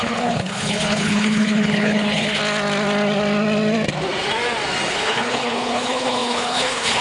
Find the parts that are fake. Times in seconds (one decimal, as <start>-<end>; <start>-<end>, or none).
0.0-2.4; 4.9-7.0